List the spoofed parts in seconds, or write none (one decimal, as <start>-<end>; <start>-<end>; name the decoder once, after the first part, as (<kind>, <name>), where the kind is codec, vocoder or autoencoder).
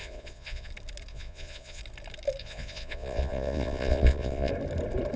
0.0-0.7 (vocoder, Vocos); 1.1-1.8; 2.4-4.5